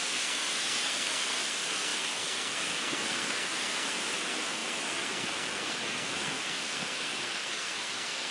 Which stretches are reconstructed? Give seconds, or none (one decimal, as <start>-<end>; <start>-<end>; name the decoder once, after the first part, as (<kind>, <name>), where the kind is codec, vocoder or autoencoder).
0.0-8.3 (codec, SNAC)

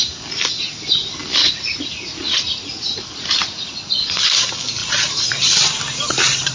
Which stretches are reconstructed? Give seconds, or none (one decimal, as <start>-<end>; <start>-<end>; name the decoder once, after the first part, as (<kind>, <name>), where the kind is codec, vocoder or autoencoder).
1.4-3.7 (vocoder, Vocos)

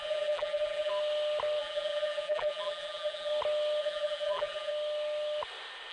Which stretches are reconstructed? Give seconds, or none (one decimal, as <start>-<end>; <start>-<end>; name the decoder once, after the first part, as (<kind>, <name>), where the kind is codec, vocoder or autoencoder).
0.0-0.9 (vocoder, BigVGAN v2); 1.6-3.3; 3.8-4.7

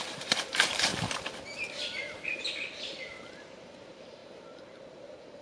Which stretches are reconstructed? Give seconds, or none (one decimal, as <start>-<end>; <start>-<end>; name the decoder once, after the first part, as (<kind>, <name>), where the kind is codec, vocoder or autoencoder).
0.0-0.9 (vocoder, BigVGAN v2); 3.4-4.2; 4.9-5.4

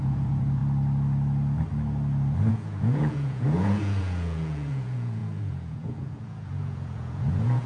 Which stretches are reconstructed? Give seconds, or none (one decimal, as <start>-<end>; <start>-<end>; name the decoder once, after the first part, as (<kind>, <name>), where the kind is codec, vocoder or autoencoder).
0.0-0.6 (vocoder, Vocos); 2.5-7.7

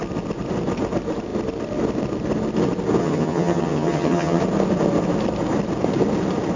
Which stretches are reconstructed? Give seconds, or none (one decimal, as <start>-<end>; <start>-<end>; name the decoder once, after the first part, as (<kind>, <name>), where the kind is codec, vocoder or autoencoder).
3.0-4.4 (vocoder, HiFi-GAN)

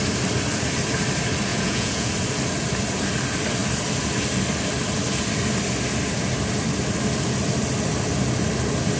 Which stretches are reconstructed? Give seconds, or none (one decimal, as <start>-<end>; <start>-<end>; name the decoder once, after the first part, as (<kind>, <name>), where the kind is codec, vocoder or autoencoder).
1.5-2.1 (vocoder, Vocos)

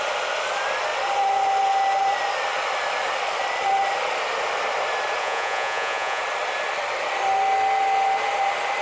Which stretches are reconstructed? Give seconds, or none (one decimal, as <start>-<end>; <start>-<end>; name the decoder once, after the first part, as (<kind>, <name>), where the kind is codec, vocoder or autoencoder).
5.2-6.2 (vocoder, Vocos)